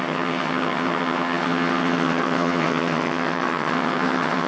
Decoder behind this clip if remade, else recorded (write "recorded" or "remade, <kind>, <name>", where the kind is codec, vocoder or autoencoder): remade, vocoder, HiFi-GAN